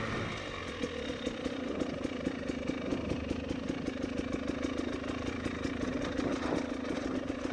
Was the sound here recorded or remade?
recorded